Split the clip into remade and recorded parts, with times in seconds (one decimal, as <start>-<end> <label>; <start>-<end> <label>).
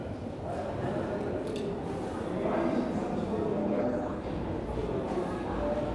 0.0-3.6 recorded; 3.6-4.3 remade; 4.3-5.9 recorded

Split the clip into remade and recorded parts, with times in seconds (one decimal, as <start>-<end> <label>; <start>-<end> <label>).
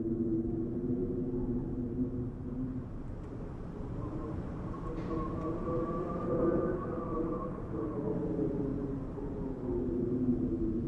0.0-10.9 recorded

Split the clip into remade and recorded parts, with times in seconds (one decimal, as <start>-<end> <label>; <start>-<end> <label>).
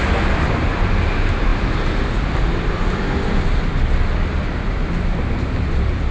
0.0-6.1 recorded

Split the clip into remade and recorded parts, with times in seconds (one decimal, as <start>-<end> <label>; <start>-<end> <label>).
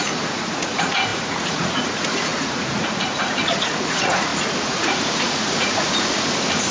0.0-6.7 remade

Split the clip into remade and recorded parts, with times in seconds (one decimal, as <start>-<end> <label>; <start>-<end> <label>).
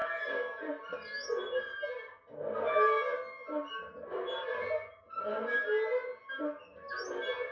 0.0-7.5 recorded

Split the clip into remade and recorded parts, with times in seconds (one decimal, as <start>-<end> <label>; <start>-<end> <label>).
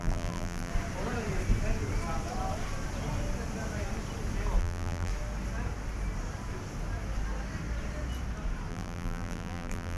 0.0-0.7 remade; 0.7-4.6 recorded; 4.6-5.1 remade; 5.1-8.7 recorded; 8.7-10.0 remade